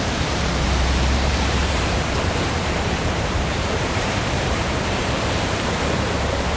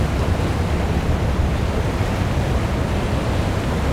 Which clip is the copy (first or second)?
first